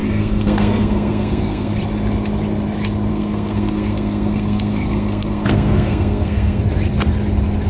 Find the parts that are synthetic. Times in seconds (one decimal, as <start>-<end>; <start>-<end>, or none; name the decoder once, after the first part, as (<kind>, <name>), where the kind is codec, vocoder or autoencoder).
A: 0.0-1.8 (codec, SNAC); 3.1-6.6